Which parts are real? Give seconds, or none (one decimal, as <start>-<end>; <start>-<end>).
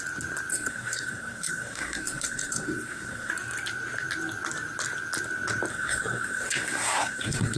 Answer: 0.0-0.5; 3.3-5.7